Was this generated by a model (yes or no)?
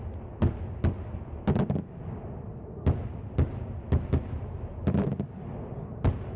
no